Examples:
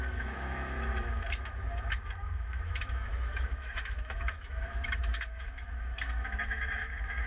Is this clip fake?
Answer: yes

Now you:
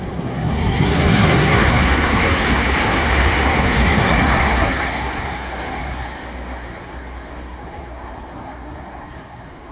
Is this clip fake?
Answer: yes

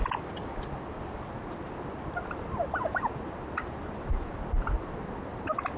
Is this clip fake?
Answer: no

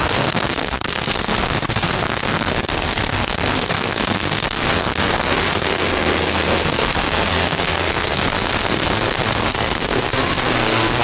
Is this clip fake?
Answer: yes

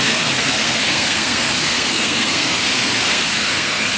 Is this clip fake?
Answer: yes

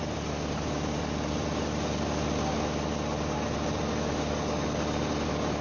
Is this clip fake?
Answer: no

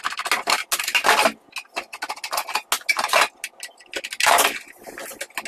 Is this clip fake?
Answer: no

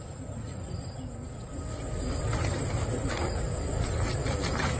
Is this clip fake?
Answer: yes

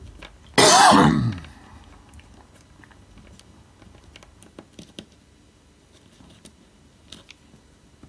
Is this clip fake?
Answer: no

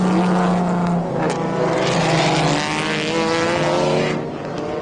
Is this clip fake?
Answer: no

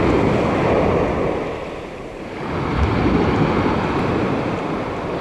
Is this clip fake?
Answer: no